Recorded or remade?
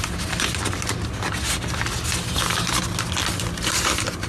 recorded